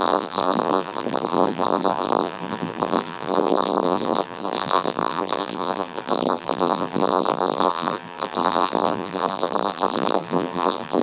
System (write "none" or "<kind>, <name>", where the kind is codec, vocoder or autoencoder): vocoder, BigVGAN v2